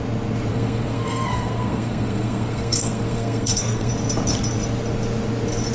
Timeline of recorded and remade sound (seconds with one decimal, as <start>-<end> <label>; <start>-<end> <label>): 0.0-0.5 recorded; 0.5-3.9 remade; 3.9-5.7 recorded